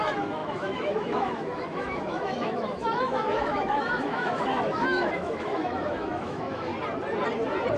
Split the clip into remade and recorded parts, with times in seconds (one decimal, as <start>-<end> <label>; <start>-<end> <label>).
0.0-6.7 remade; 6.7-7.8 recorded